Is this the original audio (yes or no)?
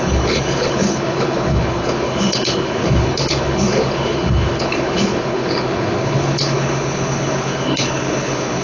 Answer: no